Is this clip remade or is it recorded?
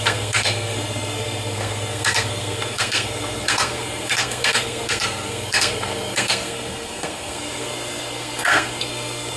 remade